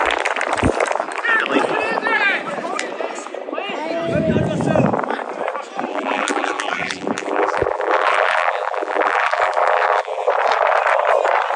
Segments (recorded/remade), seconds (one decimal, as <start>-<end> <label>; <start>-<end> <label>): 0.0-5.9 recorded; 5.9-10.3 remade; 10.3-11.6 recorded